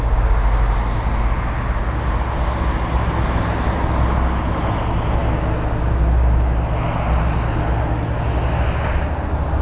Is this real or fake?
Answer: real